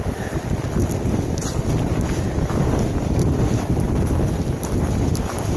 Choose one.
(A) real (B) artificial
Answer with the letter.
A